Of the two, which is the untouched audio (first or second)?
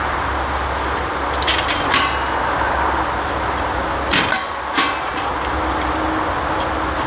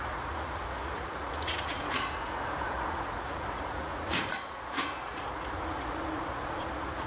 first